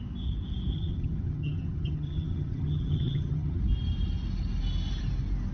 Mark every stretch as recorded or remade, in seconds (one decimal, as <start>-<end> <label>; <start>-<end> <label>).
0.0-0.7 recorded; 0.7-3.6 remade; 3.6-5.5 recorded

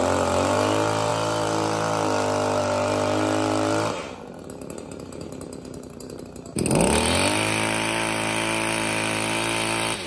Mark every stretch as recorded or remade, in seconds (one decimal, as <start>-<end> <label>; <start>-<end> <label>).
0.0-10.1 recorded